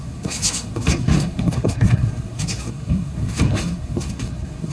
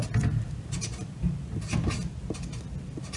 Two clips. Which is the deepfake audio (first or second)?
first